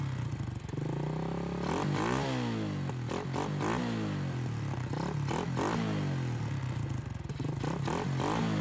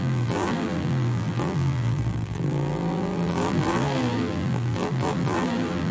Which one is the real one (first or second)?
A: first